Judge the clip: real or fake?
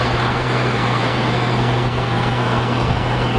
fake